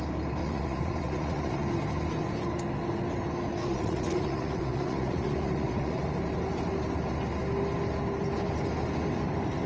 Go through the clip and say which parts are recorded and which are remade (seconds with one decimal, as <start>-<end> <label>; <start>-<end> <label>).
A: 0.0-0.4 recorded; 0.4-1.7 remade; 1.7-3.7 recorded; 3.7-6.0 remade; 6.0-9.7 recorded